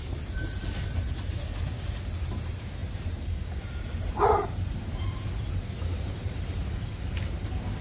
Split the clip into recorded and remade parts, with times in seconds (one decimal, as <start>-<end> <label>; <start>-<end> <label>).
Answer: 0.0-2.8 recorded; 2.8-5.7 remade; 5.7-7.8 recorded